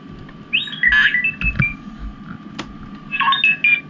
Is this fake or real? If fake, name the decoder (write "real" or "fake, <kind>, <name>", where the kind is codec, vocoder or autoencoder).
real